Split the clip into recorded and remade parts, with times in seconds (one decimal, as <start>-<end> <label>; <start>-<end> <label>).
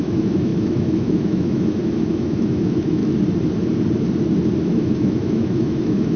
0.0-3.0 remade; 3.0-4.6 recorded; 4.6-6.2 remade